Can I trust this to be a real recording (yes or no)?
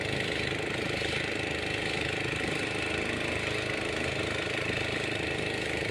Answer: yes